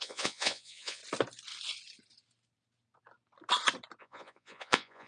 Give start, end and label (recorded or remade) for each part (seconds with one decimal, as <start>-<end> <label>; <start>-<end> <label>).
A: 0.0-1.0 remade; 1.0-4.0 recorded; 4.0-5.1 remade